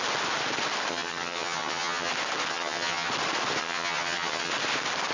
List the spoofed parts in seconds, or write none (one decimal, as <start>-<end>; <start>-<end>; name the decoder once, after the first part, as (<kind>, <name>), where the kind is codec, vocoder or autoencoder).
0.9-2.1 (vocoder, HiFi-GAN); 2.5-3.1; 3.6-4.5